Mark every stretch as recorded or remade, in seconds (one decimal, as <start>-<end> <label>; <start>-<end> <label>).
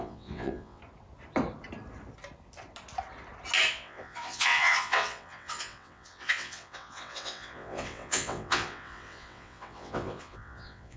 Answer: 0.0-0.8 remade; 0.8-3.7 recorded; 3.7-11.0 remade